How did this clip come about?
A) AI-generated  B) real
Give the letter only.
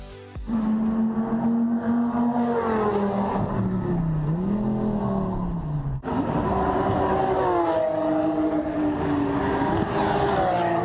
B